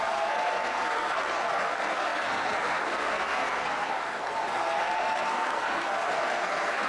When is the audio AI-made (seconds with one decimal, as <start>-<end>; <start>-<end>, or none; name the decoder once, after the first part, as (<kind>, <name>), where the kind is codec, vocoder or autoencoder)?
0.0-6.9 (codec, SNAC)

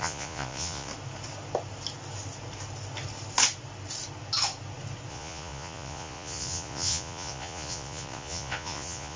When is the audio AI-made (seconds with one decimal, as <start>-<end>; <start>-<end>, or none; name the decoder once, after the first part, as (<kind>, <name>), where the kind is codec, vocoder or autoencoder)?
0.0-0.9 (vocoder, Vocos); 5.1-9.2

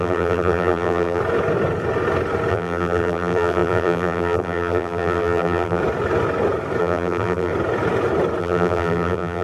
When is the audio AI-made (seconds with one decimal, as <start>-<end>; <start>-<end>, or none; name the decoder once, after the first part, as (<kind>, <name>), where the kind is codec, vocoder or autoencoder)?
0.0-1.2 (vocoder, BigVGAN v2); 2.5-5.8; 6.8-7.5; 8.4-9.4

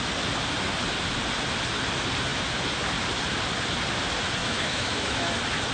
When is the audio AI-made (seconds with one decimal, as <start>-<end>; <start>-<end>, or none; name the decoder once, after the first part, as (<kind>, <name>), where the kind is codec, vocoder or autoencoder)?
4.4-5.3 (autoencoder, DAC-VAE)

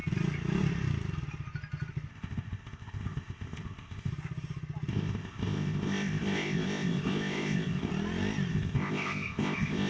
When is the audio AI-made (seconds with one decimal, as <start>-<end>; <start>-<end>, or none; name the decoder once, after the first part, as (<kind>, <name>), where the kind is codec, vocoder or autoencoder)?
2.1-4.1 (codec, ZipCodec); 4.9-7.9; 8.5-9.9